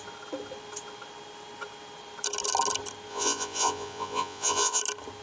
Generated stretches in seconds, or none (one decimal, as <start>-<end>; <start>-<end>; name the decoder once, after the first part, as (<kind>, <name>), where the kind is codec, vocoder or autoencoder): 3.1-4.8 (vocoder, Vocos)